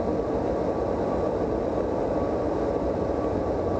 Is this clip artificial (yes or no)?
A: no